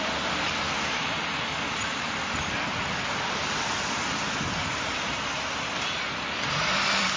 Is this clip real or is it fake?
fake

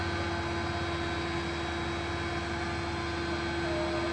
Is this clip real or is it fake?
real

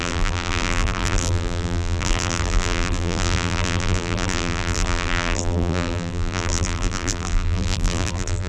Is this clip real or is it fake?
fake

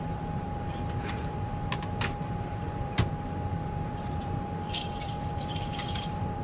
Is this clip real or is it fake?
fake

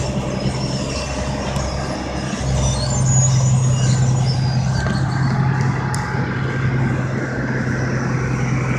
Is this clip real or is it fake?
real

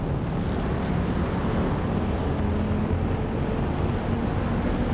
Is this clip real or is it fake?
real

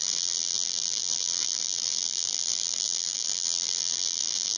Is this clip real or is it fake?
fake